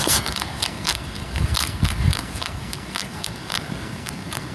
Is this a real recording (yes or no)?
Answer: no